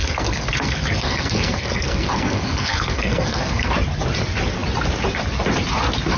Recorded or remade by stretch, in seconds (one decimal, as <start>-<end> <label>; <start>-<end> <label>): 0.0-3.7 remade; 3.7-6.2 recorded